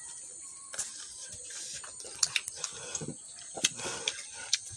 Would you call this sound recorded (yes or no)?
yes